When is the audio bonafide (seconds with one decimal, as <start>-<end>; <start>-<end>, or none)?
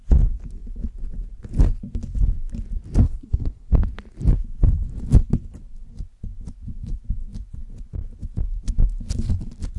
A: 0.0-3.0; 3.7-9.8